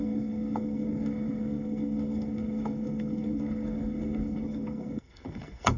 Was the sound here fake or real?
fake